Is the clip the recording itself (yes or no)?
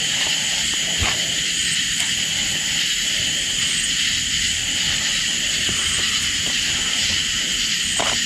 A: yes